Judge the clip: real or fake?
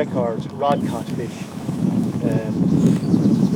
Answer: fake